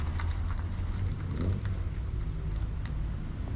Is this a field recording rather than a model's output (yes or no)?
yes